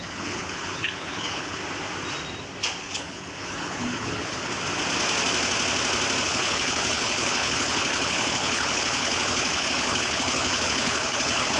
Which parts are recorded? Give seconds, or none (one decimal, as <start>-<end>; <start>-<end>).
1.6-2.8; 4.5-6.2